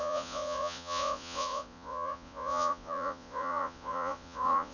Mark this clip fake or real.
fake